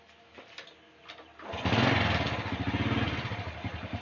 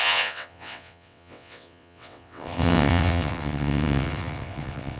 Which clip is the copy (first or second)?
second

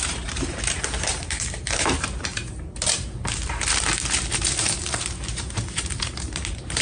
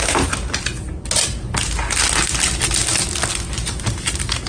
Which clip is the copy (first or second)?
first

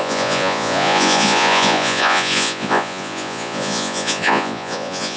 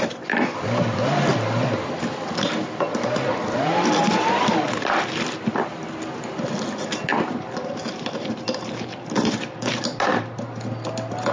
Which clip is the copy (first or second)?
first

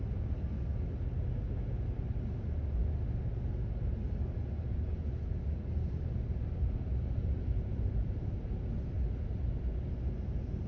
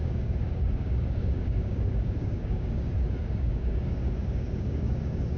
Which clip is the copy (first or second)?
second